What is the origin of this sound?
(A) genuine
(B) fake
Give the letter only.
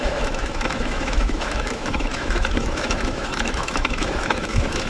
B